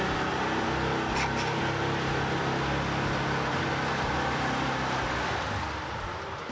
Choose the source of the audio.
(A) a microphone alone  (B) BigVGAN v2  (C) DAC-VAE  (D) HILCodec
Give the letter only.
A